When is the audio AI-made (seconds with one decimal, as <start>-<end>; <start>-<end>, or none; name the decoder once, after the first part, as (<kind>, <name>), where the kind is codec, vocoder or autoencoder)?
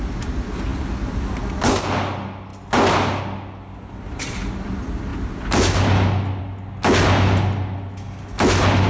none